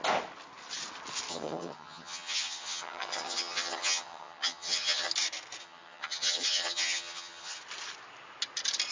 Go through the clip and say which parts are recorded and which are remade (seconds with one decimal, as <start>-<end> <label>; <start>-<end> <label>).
0.0-1.3 recorded; 1.3-5.1 remade; 5.1-5.6 recorded; 5.6-7.6 remade; 7.6-8.9 recorded